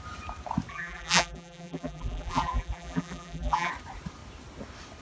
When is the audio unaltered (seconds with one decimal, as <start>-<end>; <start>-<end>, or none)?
0.0-0.7; 3.7-5.0